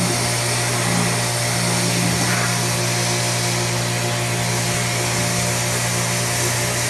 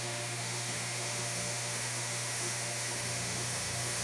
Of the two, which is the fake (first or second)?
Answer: second